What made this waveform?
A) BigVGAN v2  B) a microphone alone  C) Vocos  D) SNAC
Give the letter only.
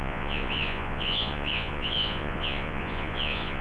C